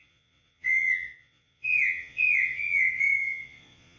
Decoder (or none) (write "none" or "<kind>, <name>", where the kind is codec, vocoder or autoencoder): vocoder, Vocos